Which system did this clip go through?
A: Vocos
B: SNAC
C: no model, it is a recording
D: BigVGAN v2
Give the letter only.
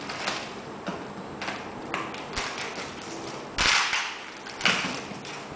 C